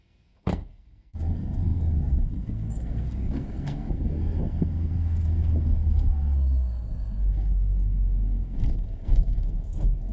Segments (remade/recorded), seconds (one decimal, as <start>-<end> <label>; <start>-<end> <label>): 0.0-10.1 remade